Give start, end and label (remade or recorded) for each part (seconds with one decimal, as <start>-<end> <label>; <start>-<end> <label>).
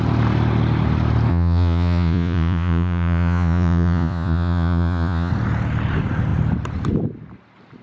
0.0-1.3 recorded; 1.3-5.3 remade; 5.3-7.8 recorded